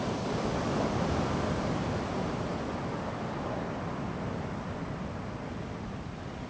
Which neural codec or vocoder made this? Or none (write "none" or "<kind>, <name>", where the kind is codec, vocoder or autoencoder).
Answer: none